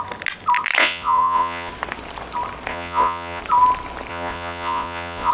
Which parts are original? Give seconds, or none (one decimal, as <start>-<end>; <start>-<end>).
0.0-0.8; 1.7-2.7; 3.4-4.1